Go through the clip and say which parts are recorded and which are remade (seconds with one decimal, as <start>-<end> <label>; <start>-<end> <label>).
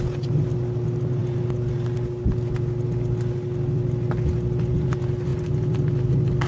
0.0-6.5 recorded